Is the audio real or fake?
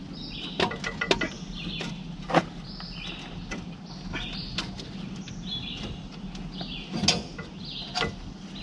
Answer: real